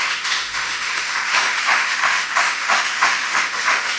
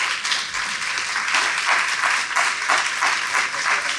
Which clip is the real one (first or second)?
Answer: second